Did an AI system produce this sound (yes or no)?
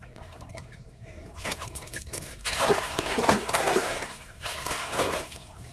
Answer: yes